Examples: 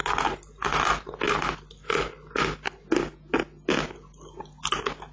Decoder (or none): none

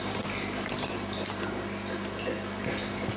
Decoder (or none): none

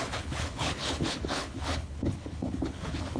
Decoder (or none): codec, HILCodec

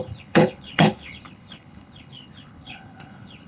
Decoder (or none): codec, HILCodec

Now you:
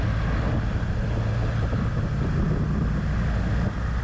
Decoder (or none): none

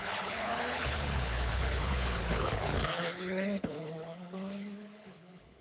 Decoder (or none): codec, HILCodec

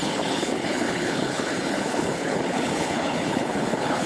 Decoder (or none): codec, HILCodec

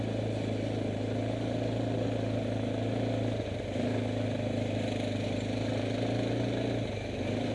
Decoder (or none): none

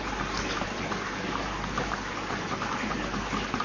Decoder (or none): none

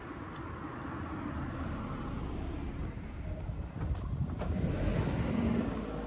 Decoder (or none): none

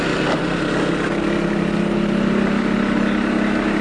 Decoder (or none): none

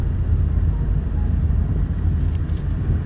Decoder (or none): none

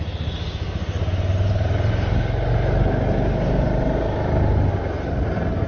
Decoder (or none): none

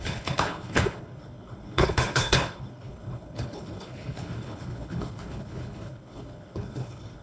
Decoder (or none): codec, HILCodec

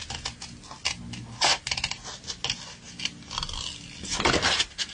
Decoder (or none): none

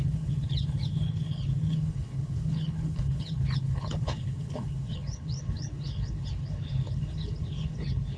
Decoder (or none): codec, HILCodec